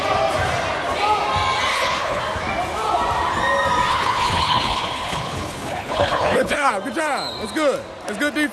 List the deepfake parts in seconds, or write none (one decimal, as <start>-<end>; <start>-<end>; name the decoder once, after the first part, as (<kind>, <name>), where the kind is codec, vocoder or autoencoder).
1.7-2.2 (codec, HILCodec); 3.9-6.7